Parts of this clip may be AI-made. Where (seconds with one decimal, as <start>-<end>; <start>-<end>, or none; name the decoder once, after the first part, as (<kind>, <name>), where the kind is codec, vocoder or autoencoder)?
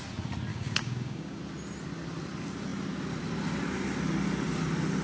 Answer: 0.5-1.4 (codec, DAC)